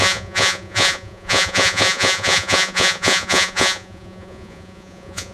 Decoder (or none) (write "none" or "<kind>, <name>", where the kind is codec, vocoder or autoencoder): vocoder, Vocos